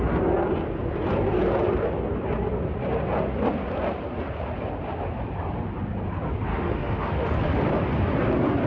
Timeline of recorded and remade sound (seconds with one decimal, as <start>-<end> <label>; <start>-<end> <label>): 0.0-6.5 recorded; 6.5-7.3 remade; 7.3-8.7 recorded